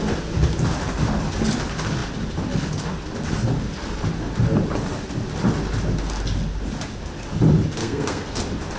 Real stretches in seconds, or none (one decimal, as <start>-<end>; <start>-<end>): 0.0-7.8; 8.4-8.8